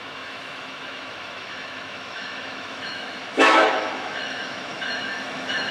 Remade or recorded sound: remade